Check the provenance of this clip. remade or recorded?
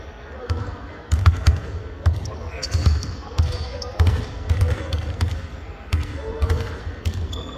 remade